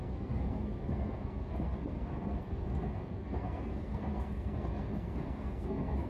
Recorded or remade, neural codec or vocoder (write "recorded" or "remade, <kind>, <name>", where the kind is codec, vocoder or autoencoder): remade, codec, SNAC